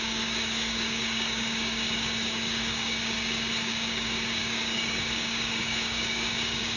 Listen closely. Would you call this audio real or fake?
fake